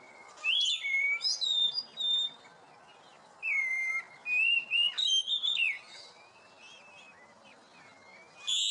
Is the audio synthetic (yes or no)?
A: no